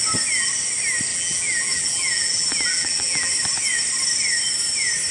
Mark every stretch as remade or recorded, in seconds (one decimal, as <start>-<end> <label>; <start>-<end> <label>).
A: 0.0-1.1 recorded; 1.1-3.3 remade; 3.3-5.1 recorded